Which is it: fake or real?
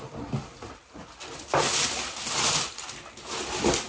real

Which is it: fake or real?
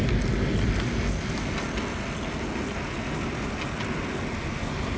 real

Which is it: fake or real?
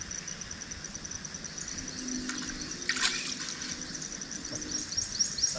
real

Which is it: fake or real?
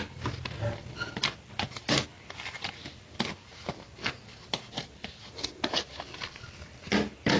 real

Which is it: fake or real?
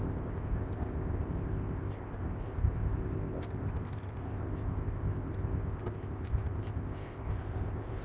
fake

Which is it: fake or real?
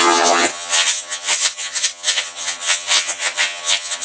fake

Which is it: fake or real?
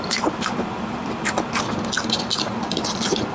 real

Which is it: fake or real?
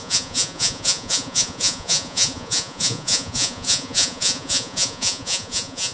fake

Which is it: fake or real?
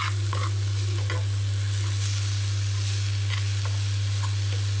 real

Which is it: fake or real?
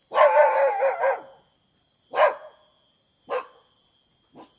real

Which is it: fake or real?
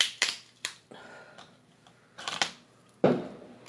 real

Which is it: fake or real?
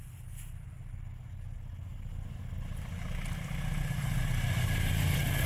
real